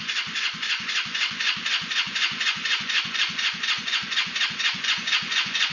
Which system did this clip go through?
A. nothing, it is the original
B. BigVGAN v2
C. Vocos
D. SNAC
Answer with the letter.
C